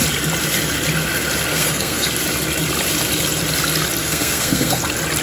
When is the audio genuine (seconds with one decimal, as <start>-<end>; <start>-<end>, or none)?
0.0-1.5; 2.1-4.0; 4.8-5.2